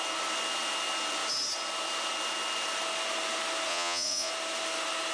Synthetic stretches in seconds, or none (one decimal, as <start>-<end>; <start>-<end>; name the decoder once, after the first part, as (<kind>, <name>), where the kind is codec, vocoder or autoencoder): 3.7-4.3 (vocoder, Vocos)